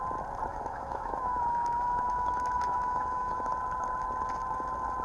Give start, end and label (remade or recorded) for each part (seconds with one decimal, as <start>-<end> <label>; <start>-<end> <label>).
0.0-0.5 recorded; 0.5-3.5 remade; 3.5-5.0 recorded